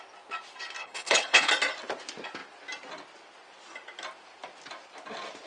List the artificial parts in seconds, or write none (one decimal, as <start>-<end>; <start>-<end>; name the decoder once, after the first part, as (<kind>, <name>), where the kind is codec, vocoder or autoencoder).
0.8-1.5 (codec, HILCodec)